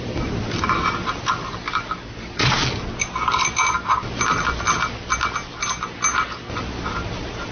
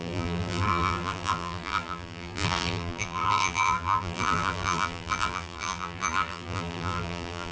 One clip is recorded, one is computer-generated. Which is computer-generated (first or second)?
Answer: second